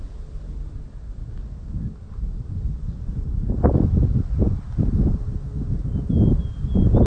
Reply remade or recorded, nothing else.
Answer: recorded